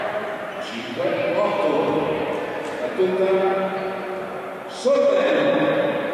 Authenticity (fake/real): real